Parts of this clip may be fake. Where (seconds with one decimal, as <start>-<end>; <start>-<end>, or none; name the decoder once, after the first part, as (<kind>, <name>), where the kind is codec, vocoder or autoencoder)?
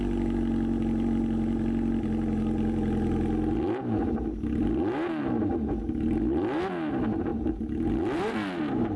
7.3-8.6 (vocoder, BigVGAN v2)